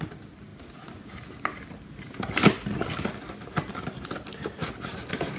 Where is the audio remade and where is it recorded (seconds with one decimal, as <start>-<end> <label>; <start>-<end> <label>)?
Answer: 0.0-5.4 recorded